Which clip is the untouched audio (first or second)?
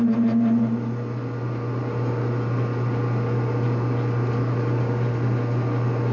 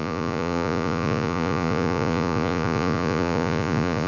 first